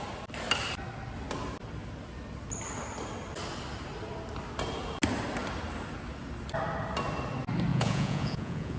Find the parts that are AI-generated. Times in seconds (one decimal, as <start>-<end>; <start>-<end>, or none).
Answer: 7.7-8.8